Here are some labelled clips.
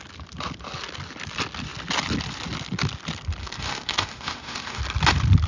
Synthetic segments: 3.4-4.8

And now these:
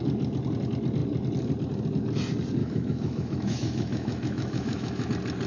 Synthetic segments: 2.6-5.1

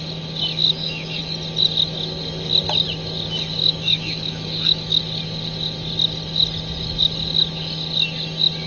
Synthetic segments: 0.6-1.2; 3.6-5.0

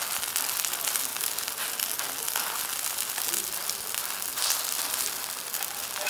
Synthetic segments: none

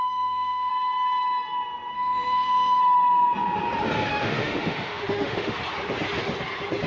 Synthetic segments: 0.0-0.7; 1.9-2.8; 4.1-5.6

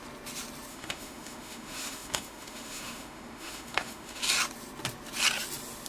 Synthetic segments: 0.7-4.2